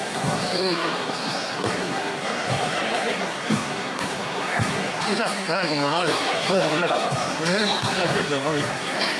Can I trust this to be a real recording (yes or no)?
no